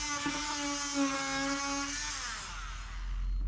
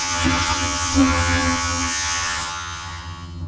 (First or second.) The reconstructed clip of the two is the second